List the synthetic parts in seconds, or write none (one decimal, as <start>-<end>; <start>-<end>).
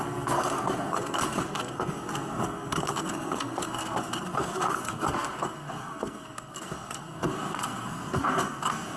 0.0-9.0